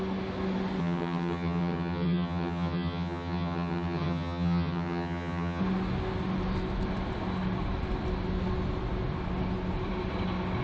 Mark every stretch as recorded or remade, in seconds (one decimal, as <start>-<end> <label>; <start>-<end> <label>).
0.0-0.8 recorded; 0.8-5.6 remade; 5.6-10.6 recorded